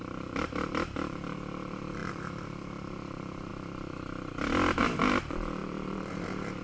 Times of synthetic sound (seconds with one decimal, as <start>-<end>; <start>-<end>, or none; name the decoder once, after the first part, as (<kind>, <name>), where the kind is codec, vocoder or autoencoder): 0.0-3.5 (vocoder, BigVGAN v2); 4.8-6.6